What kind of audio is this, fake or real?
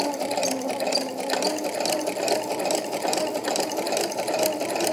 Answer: real